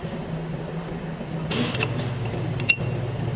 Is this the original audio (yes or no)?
yes